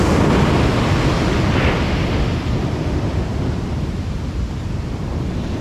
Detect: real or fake real